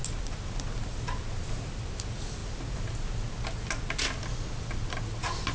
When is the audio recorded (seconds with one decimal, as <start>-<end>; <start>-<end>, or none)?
0.0-5.5